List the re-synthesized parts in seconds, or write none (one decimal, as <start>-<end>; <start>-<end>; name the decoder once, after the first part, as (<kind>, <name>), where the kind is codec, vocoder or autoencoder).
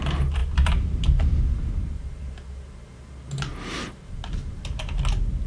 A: none